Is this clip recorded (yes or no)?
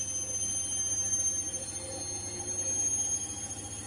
yes